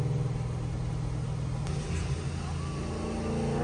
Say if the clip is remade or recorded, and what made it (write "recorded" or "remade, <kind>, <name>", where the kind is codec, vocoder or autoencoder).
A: recorded